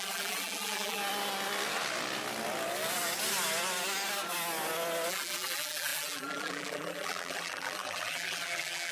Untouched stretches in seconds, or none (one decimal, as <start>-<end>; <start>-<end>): 1.0-5.1